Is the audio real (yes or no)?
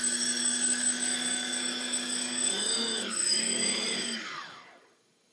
no